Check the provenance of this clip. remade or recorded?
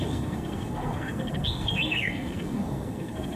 remade